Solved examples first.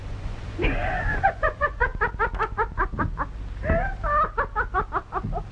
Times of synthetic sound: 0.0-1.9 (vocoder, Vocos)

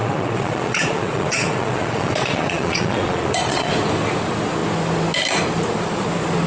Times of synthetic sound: 0.0-3.7 (vocoder, Vocos)

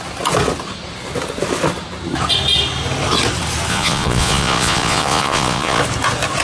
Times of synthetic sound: 3.7-5.8 (vocoder, Vocos)

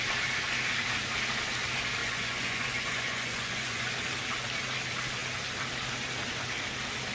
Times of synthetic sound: 2.0-3.9 (vocoder, Vocos)

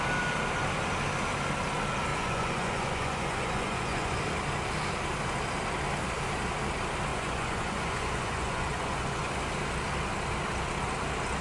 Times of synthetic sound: 2.1-4.2 (vocoder, Vocos); 7.1-9.3

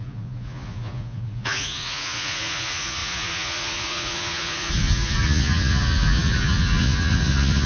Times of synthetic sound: 0.0-7.7 (vocoder, Vocos)

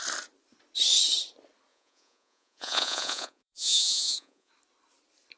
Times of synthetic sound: 1.7-4.5 (vocoder, Vocos)

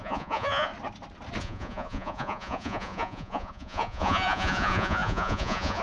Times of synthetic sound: 0.0-0.7 (vocoder, Vocos); 1.4-5.8